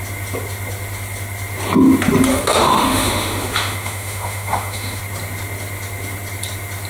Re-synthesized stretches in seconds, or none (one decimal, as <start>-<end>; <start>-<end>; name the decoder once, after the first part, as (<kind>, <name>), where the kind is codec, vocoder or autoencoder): 2.3-5.0 (autoencoder, DAC-VAE)